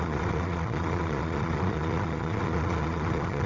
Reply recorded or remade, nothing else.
remade